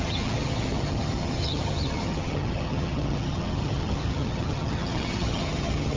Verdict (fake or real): fake